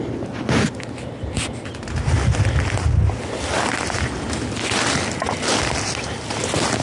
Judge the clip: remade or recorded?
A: recorded